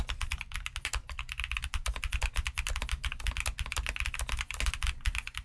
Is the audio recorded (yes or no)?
yes